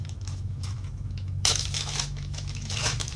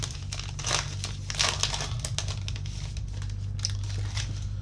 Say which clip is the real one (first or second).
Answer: second